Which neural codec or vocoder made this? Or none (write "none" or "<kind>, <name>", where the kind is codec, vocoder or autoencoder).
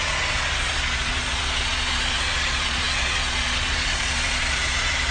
vocoder, Vocos